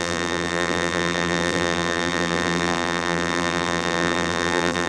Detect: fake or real fake